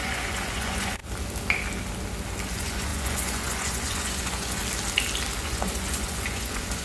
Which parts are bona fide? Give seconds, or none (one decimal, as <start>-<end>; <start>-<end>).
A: 1.0-2.5; 4.6-5.4